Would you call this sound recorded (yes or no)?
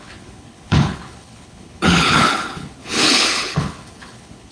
no